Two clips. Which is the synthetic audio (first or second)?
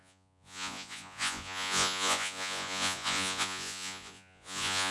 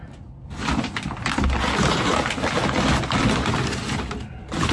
first